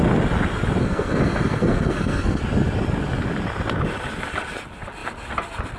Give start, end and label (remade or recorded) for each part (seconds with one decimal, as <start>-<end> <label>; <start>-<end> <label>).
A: 0.0-0.8 recorded; 0.8-2.4 remade; 2.4-5.8 recorded